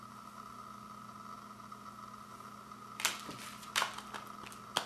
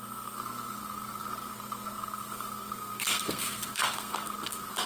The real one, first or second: first